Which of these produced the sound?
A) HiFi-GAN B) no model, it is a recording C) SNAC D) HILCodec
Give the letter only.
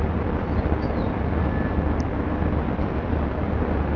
B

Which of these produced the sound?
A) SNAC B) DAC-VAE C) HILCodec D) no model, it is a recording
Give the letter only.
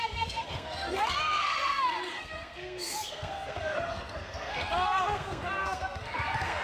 A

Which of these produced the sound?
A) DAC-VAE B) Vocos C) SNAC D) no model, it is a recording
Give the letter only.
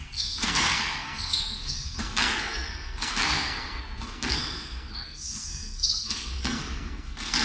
C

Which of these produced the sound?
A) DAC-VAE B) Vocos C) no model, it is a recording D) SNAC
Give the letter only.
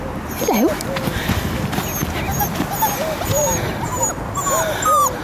C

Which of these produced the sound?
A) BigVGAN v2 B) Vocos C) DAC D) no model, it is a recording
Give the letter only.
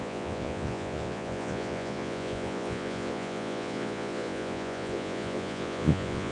B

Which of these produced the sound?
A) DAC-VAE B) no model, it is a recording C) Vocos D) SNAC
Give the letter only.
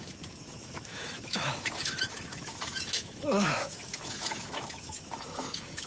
A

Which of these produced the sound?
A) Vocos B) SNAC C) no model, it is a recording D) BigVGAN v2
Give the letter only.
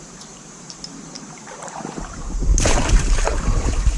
D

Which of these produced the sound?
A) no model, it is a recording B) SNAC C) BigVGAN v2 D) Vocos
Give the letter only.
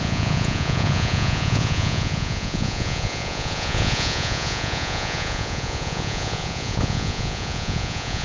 D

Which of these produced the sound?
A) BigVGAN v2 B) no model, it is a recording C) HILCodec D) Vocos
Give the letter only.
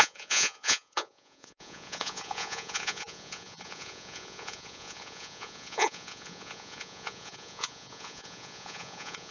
D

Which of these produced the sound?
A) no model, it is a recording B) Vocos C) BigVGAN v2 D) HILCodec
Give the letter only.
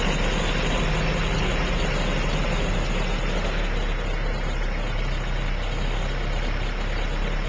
A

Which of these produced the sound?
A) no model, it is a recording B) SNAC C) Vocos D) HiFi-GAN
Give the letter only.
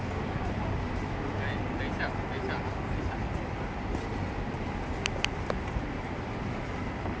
A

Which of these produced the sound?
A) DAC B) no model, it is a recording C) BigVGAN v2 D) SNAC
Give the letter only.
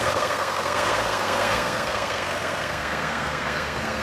D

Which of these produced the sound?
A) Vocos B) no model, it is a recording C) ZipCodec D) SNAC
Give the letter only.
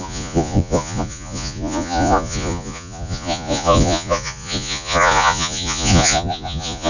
A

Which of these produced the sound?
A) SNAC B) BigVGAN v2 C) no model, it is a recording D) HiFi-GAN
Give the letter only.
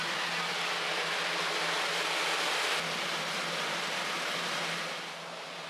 C